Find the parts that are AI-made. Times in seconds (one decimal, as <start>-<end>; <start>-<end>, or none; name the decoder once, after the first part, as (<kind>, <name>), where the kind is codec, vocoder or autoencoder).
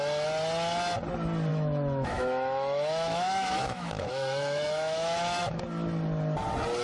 1.5-5.6 (autoencoder, DAC-VAE)